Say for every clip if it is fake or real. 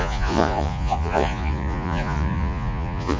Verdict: fake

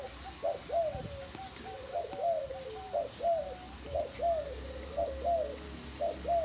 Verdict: real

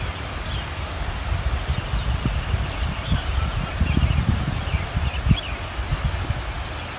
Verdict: real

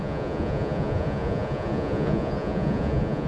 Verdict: fake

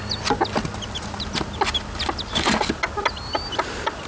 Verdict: real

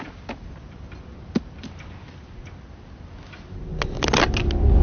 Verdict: real